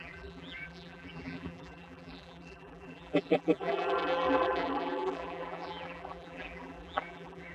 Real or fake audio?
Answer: fake